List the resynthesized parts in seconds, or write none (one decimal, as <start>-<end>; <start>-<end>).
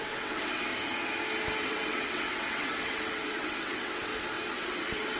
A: 0.0-0.7; 1.6-4.1; 4.6-5.2